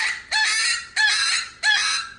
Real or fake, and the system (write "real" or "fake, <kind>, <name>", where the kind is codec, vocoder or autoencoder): real